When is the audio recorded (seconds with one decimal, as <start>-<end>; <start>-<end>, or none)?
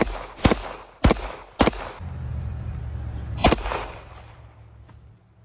0.0-2.3; 2.8-3.4; 4.4-5.4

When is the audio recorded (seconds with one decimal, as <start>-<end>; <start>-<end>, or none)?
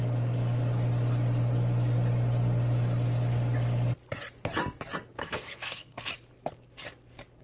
0.0-5.2; 6.1-7.4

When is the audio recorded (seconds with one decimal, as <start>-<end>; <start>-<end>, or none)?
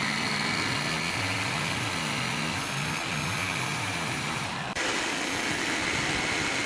0.0-3.7; 4.5-6.7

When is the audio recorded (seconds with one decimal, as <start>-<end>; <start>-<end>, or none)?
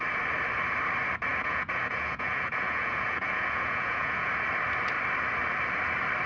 0.0-1.3; 4.3-6.3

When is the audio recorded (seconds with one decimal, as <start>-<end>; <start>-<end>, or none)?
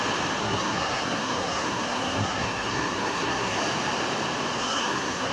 0.0-0.4; 3.6-4.6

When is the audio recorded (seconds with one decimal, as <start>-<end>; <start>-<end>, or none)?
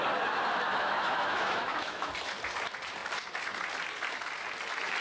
0.0-0.7; 2.1-5.0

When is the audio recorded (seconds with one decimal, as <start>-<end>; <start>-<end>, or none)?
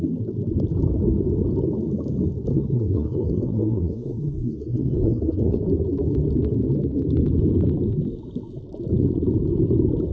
0.0-2.5; 5.6-10.1